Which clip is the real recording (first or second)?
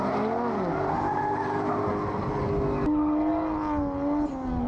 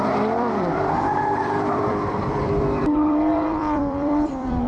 first